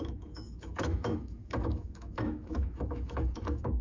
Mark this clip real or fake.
fake